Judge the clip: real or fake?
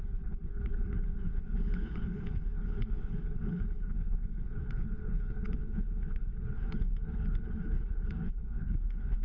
fake